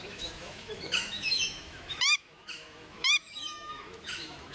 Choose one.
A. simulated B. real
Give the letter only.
A